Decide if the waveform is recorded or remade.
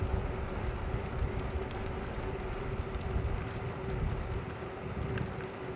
recorded